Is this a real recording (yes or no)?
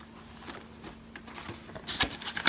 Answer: yes